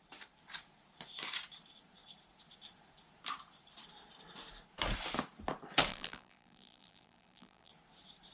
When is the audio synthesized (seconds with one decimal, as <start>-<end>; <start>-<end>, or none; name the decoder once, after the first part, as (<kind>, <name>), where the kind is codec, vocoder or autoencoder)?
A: 5.9-7.7 (vocoder, BigVGAN v2)